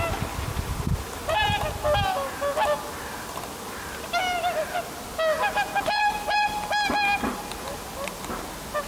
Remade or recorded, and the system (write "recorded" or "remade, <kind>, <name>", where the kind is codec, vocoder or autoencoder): recorded